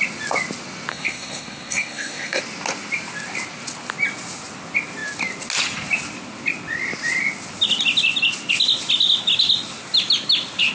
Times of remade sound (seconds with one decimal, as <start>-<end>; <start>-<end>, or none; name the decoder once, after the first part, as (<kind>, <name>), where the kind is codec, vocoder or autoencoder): 0.9-2.4 (codec, SNAC)